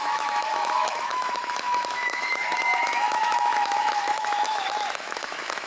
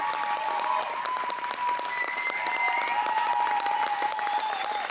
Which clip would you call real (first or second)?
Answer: second